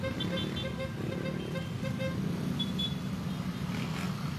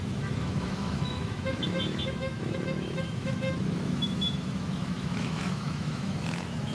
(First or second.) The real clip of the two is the first